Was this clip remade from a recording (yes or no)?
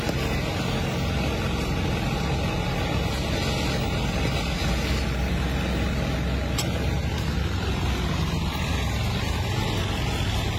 no